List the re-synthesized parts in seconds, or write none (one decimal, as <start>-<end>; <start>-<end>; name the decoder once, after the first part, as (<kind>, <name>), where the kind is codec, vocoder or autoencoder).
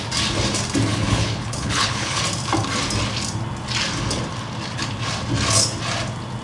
0.9-2.2 (codec, HILCodec)